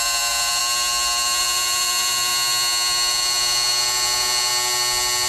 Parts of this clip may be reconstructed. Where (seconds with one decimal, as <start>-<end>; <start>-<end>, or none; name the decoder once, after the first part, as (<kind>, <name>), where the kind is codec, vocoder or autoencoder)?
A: 0.0-0.6 (vocoder, Vocos); 1.4-2.3; 3.1-4.5